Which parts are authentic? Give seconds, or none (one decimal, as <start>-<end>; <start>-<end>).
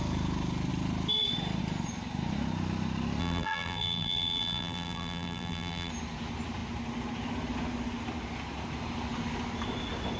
0.0-3.2; 5.9-10.2